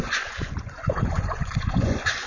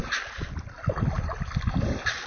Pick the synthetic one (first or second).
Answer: first